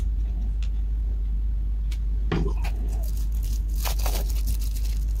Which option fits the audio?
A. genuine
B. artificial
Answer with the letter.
A